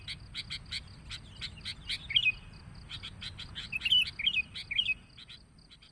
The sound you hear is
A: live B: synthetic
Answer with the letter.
A